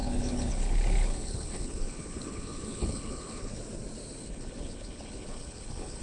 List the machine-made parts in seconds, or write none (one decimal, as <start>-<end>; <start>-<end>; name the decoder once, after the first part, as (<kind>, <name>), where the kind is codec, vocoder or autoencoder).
0.0-3.6 (codec, HILCodec); 4.2-6.0